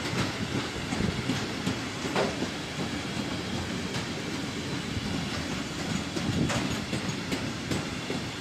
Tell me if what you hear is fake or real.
real